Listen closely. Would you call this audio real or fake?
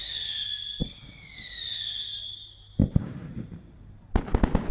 real